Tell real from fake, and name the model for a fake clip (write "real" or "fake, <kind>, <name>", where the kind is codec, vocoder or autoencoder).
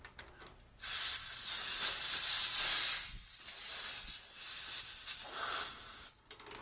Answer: real